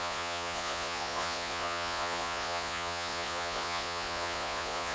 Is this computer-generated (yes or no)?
yes